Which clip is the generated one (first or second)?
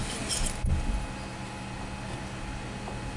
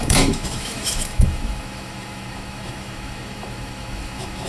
second